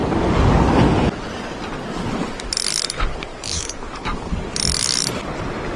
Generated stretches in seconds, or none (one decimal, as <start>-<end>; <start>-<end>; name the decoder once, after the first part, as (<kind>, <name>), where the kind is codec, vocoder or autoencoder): 3.3-4.3 (vocoder, BigVGAN v2)